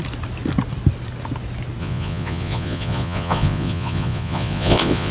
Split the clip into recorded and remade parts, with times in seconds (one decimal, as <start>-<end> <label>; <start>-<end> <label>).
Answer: 0.0-1.8 recorded; 1.8-5.1 remade